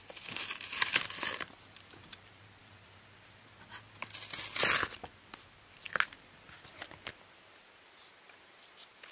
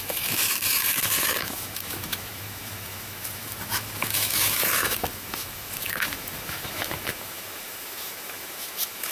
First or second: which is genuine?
first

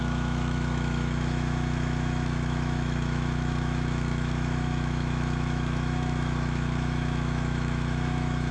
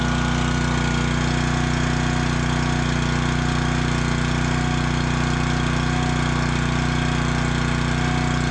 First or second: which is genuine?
second